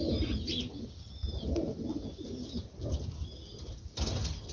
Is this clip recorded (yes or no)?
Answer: yes